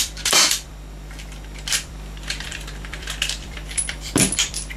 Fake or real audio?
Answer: fake